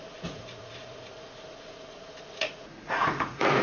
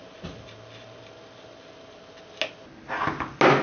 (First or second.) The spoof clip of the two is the first